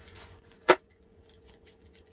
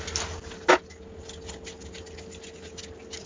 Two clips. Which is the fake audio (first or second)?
first